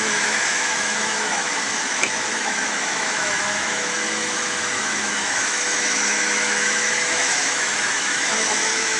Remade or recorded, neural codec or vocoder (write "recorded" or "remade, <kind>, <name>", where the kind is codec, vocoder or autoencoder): remade, autoencoder, DAC-VAE